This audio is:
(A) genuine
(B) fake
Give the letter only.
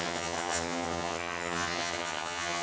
B